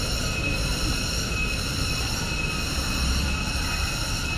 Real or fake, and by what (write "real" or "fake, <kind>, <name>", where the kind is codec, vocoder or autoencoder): fake, vocoder, BigVGAN v2